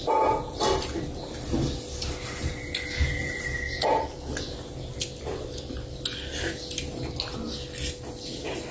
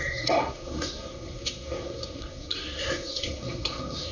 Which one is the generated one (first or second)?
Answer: second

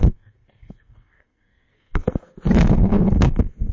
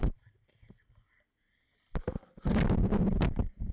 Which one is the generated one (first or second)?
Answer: first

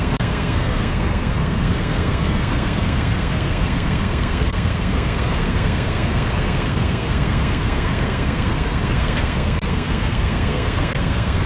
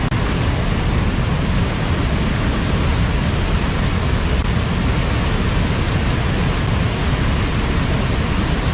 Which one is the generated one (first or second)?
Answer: first